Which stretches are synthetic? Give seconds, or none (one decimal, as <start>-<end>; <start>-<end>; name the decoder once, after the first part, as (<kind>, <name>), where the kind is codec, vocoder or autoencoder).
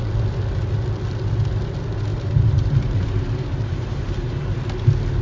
2.1-4.6 (vocoder, BigVGAN v2)